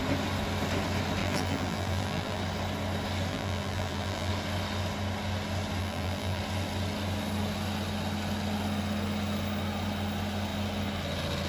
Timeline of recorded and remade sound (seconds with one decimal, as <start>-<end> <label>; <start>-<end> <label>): 0.0-1.2 recorded; 1.2-2.4 remade; 2.4-3.3 recorded; 3.3-4.3 remade; 4.3-5.8 recorded; 5.8-6.4 remade; 6.4-11.5 recorded